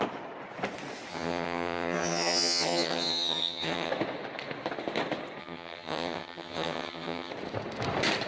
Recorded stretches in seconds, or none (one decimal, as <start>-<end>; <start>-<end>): 0.0-1.1; 3.9-5.4; 7.3-8.3